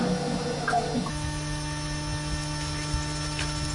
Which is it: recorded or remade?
recorded